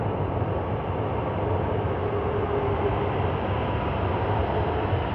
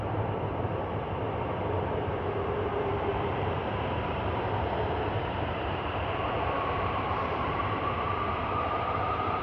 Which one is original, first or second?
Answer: first